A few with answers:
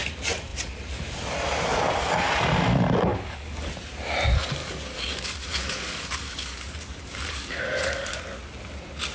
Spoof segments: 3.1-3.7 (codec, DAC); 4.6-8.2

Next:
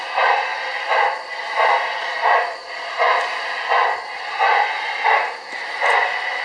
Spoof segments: none

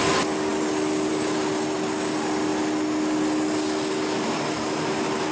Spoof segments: none

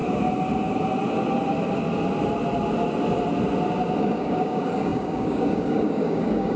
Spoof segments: 4.0-6.6 (codec, DAC)

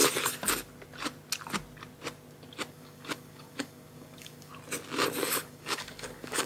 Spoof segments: 2.7-4.5 (codec, DAC); 5.2-6.5

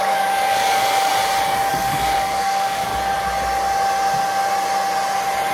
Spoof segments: 0.0-1.1 (codec, DAC); 1.7-2.9

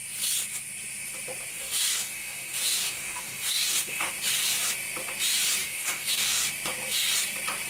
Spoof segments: 1.5-4.1 (codec, DAC); 5.6-6.5